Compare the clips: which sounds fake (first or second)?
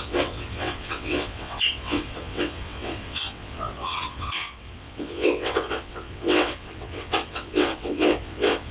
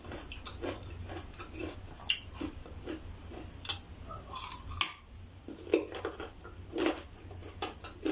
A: first